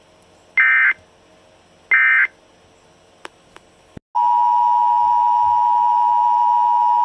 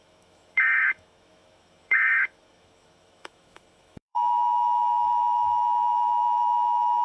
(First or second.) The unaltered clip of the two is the first